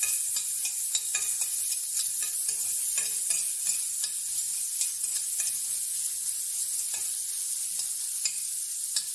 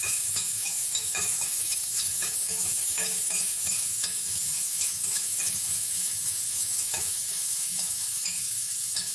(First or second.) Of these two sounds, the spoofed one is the second